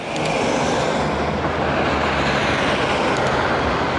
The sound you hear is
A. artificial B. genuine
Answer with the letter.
B